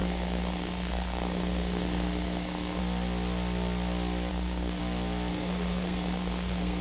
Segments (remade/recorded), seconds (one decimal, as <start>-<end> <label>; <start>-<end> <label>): 0.0-2.8 remade; 2.8-4.3 recorded; 4.3-4.8 remade; 4.8-5.3 recorded; 5.3-6.8 remade